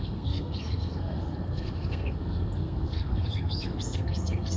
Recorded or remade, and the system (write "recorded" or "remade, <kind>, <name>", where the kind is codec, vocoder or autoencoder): remade, codec, SNAC